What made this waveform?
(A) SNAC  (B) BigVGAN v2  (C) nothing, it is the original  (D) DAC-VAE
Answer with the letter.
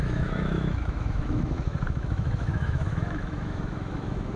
D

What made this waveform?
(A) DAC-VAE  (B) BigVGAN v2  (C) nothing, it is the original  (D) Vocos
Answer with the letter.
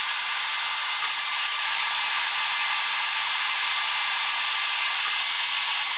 C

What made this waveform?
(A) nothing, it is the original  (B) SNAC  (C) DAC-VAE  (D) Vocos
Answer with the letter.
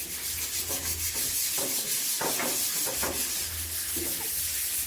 A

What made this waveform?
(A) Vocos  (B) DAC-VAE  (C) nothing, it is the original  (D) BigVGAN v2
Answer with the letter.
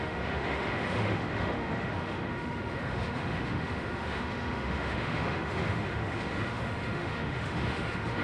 B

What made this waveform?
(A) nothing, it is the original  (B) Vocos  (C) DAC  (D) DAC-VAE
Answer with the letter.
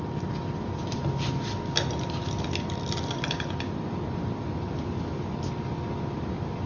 A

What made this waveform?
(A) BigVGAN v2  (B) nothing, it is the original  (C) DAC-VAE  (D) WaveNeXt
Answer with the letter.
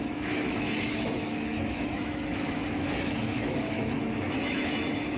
C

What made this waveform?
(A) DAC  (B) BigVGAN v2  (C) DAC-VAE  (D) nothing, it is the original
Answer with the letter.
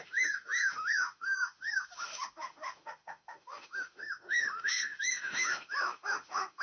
C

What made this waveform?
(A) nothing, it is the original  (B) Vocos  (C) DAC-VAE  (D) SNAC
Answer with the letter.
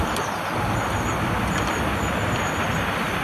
A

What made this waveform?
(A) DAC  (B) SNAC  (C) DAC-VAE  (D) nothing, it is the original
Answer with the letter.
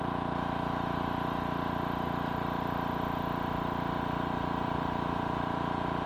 D